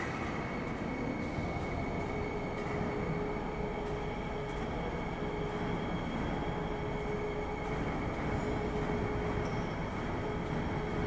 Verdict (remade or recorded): recorded